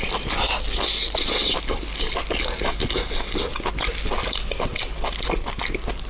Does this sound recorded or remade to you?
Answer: recorded